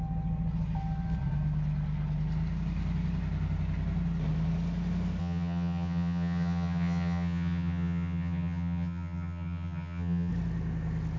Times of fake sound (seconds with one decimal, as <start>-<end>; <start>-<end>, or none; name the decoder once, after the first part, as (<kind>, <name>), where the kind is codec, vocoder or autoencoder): 5.2-10.3 (vocoder, HiFi-GAN)